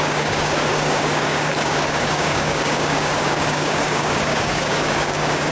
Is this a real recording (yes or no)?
no